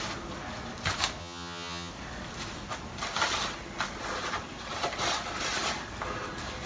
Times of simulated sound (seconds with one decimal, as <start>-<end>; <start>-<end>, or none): 1.2-1.9